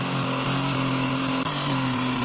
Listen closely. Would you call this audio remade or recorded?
recorded